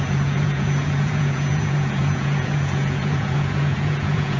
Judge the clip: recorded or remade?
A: remade